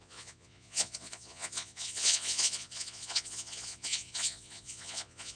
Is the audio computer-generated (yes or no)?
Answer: yes